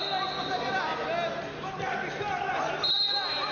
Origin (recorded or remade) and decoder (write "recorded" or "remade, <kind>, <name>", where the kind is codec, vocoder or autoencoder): recorded